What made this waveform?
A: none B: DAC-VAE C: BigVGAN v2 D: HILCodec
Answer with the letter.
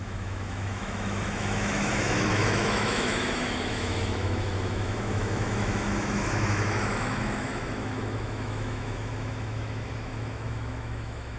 B